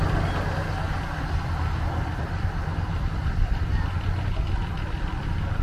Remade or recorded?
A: remade